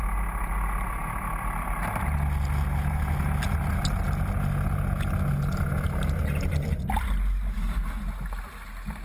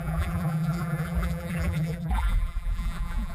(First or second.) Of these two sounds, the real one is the first